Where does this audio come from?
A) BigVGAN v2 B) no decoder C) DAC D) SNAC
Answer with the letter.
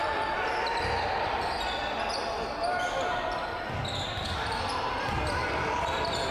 B